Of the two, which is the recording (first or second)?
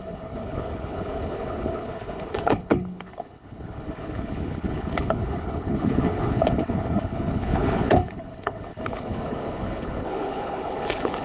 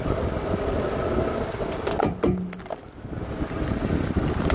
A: second